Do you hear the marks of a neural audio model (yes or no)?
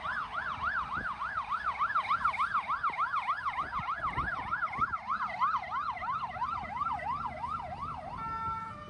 no